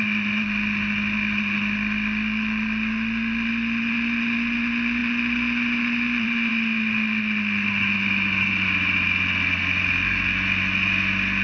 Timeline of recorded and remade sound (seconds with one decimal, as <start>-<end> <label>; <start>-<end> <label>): 0.0-11.4 recorded